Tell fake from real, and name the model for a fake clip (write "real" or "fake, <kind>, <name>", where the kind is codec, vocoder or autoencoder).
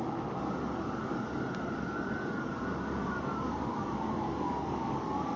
fake, codec, DAC